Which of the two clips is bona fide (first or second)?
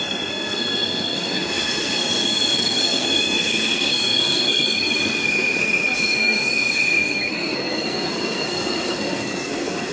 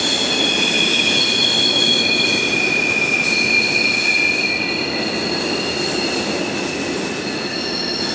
second